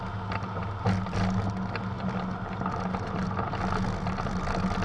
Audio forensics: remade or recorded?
recorded